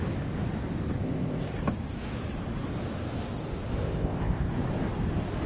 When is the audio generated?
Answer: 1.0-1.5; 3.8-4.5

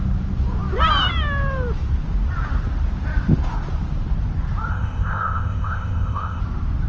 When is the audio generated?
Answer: 4.7-6.4